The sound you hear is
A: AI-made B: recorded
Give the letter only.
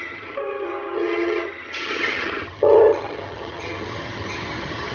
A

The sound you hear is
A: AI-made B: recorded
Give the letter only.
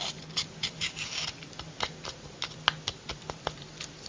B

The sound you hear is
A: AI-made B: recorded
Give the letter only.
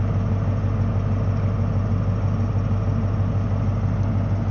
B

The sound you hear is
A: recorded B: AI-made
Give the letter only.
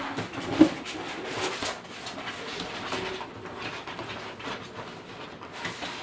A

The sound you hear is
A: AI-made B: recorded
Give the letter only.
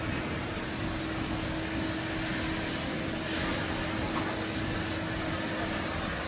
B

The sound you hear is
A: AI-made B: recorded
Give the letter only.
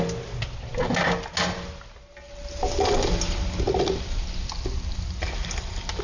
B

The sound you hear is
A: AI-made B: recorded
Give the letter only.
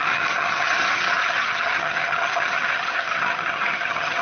A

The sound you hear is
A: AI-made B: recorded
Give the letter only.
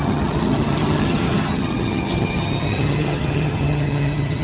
A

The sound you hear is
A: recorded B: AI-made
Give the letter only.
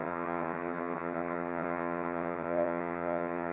B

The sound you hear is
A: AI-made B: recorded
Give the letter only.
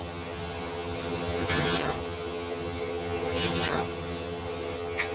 A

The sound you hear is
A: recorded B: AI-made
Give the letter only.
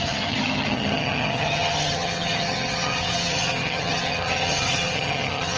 B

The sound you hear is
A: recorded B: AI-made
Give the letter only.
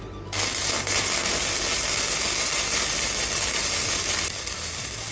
A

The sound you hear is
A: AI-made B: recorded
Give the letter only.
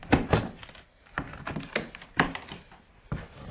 B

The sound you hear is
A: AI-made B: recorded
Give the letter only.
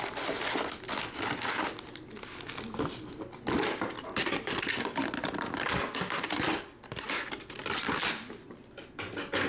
B